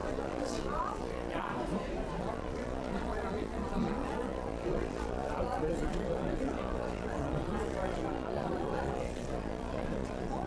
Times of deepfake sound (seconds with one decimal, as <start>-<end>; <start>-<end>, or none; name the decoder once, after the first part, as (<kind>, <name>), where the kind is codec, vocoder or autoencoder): 0.0-1.5 (vocoder, Vocos); 2.2-10.5